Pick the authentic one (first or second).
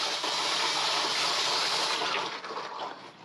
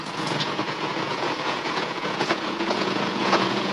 first